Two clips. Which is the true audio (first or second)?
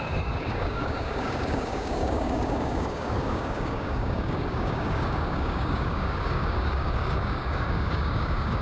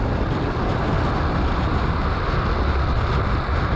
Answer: second